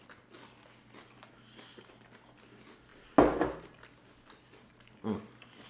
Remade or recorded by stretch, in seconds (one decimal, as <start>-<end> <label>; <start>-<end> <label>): 0.0-5.7 recorded